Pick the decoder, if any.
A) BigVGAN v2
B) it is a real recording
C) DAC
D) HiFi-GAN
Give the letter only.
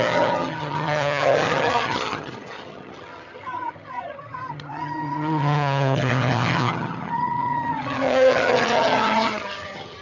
D